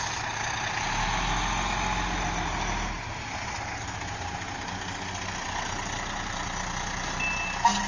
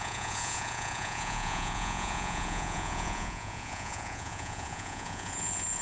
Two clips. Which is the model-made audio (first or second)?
second